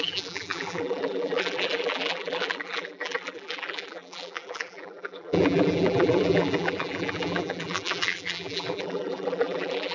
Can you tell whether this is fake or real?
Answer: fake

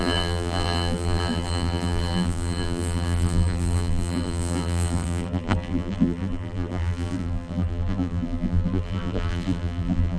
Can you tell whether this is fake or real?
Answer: fake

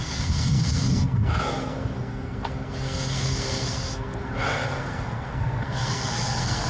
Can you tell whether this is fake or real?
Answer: fake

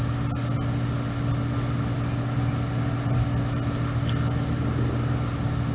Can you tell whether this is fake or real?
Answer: real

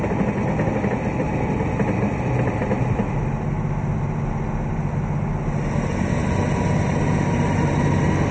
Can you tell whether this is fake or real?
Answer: real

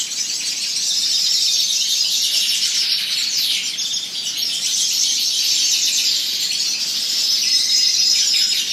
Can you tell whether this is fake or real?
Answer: real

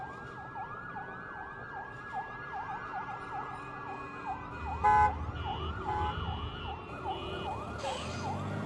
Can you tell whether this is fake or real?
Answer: real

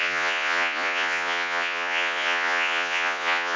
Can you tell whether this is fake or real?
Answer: fake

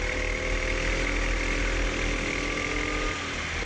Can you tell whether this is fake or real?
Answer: real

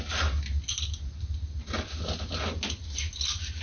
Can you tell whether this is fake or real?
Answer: real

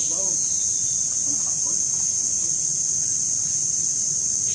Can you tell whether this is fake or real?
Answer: real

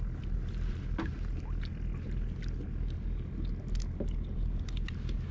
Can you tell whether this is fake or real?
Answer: real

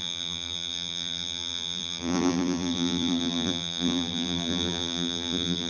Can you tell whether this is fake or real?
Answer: fake